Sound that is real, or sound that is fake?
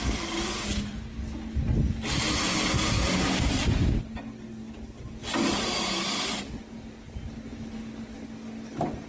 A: real